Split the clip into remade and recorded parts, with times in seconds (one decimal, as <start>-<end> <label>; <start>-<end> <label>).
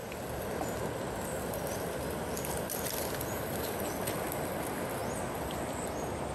0.0-6.3 recorded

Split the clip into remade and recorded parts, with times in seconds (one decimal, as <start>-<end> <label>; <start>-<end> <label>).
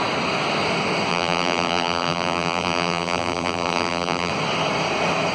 0.0-1.1 recorded; 1.1-4.3 remade; 4.3-5.3 recorded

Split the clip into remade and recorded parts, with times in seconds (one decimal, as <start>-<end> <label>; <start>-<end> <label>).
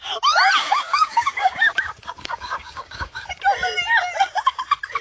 0.0-0.6 recorded; 0.6-3.3 remade; 3.3-5.0 recorded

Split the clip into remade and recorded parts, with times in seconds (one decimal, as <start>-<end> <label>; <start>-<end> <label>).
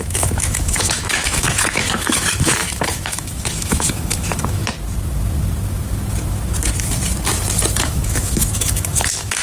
0.0-4.6 remade; 4.6-7.8 recorded; 7.8-9.4 remade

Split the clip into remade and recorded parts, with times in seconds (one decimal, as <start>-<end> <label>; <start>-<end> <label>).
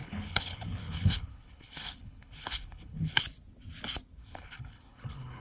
0.0-3.2 remade; 3.2-4.2 recorded; 4.2-5.4 remade